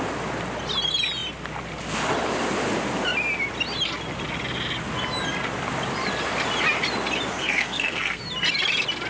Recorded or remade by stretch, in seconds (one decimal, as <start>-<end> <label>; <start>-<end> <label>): 0.0-7.3 recorded; 7.3-8.2 remade; 8.2-9.1 recorded